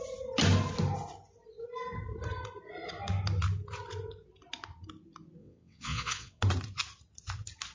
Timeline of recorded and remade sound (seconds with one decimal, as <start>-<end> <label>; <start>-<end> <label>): 0.0-5.4 recorded; 5.4-6.4 remade; 6.4-7.7 recorded